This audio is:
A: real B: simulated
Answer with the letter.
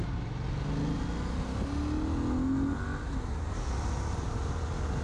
A